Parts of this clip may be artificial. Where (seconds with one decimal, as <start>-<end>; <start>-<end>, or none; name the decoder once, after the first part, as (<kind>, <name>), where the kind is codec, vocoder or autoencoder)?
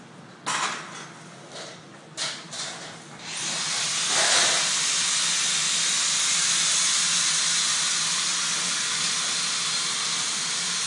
1.8-3.6 (vocoder, BigVGAN v2)